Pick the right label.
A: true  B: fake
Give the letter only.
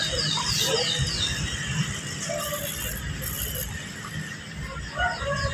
A